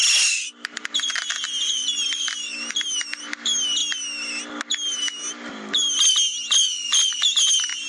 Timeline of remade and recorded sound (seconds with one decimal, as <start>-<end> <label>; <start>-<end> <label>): 0.0-7.9 recorded